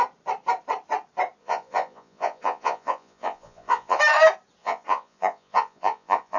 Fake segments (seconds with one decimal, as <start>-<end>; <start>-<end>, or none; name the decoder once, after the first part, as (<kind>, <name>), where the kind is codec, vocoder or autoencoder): 1.4-4.0 (vocoder, Vocos); 4.6-6.4